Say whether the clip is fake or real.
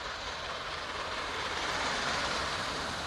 fake